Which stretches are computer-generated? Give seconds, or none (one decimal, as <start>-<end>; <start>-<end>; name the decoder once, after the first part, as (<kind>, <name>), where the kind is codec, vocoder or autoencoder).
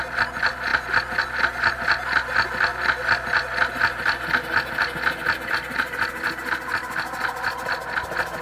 none